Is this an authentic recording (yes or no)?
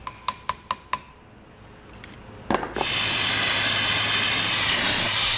yes